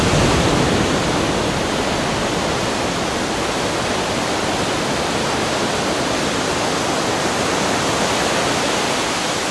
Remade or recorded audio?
recorded